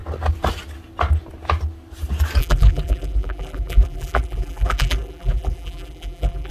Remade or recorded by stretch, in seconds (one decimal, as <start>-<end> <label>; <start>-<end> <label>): 0.0-2.4 recorded; 2.4-6.5 remade